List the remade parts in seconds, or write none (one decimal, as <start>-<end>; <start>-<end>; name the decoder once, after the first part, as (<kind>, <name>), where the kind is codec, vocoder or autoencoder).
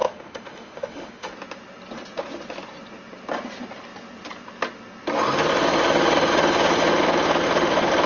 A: 0.0-1.3 (autoencoder, DAC-VAE)